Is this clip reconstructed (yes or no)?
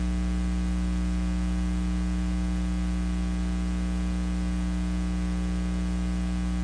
no